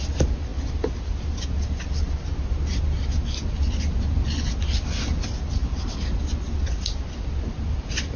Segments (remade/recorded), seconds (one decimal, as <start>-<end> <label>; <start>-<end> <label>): 0.0-8.2 recorded